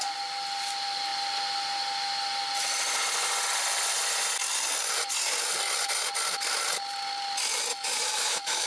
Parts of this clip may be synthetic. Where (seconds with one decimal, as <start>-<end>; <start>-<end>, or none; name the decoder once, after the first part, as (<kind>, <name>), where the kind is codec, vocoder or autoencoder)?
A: 7.7-8.7 (autoencoder, DAC-VAE)